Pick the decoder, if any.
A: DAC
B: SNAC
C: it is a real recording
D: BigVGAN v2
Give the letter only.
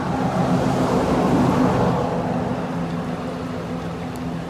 C